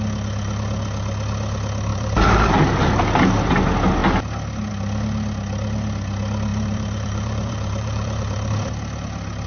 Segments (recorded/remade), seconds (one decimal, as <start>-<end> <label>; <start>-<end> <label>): 0.0-1.9 recorded; 1.9-2.6 remade; 2.6-6.5 recorded; 6.5-8.5 remade; 8.5-9.5 recorded